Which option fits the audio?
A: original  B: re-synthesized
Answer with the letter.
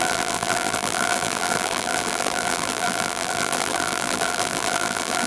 B